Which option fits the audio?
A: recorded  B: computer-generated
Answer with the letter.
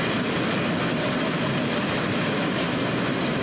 A